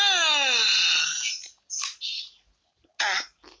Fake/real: real